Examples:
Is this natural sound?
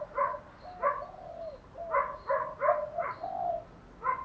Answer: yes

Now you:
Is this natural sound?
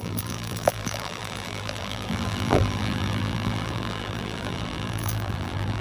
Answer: no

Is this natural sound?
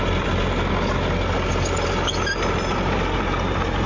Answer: yes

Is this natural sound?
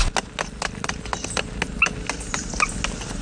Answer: yes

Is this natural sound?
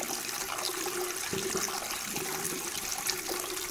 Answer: yes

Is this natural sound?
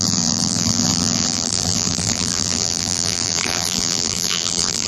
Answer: no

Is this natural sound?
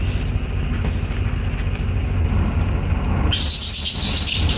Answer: yes